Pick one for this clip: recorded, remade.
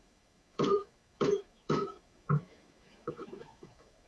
remade